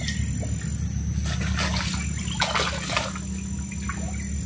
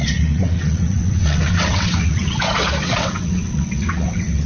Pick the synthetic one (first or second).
second